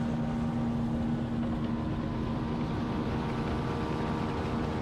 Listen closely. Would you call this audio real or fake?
real